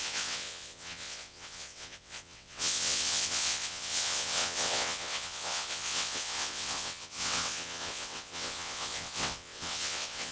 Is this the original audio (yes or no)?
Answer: no